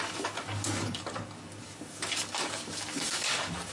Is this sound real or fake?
fake